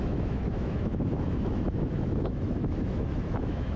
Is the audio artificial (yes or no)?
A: yes